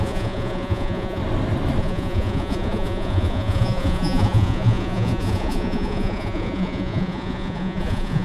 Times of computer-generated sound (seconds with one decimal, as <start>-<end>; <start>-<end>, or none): 0.0-1.2; 1.8-8.2

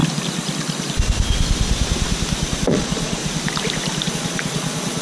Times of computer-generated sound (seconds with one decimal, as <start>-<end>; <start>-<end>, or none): 2.7-3.2; 4.1-5.0

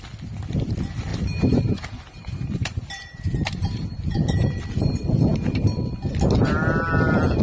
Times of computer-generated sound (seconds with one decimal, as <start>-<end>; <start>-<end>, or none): 1.1-4.6

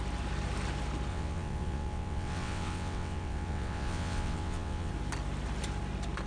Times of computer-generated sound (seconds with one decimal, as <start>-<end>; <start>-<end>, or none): 1.1-4.9